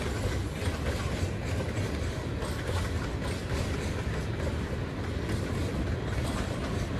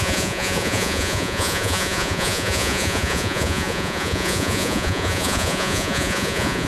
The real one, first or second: first